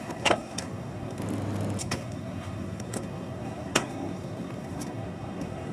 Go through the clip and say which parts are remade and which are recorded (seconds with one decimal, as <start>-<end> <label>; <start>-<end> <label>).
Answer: 0.0-1.2 remade; 1.2-1.8 recorded; 1.8-5.7 remade